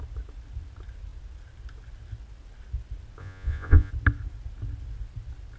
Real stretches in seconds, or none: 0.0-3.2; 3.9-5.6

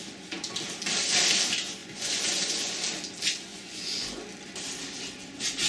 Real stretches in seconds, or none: 0.0-1.8; 2.8-3.5; 4.2-5.7

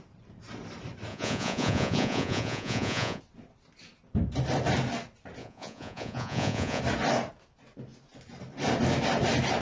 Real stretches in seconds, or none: 0.0-1.1; 3.2-5.4; 6.8-9.6

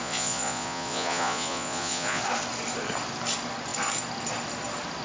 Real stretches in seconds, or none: 2.2-5.0